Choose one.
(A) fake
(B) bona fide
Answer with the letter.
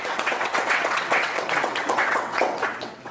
A